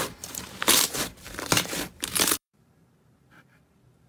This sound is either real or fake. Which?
fake